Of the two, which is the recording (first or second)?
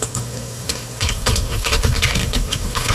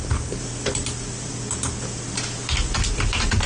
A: second